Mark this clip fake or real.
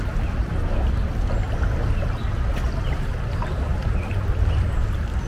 real